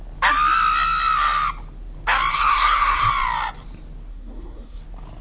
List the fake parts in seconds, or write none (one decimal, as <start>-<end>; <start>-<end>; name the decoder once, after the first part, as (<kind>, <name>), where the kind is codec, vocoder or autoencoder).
2.3-3.1 (codec, SNAC); 4.1-4.8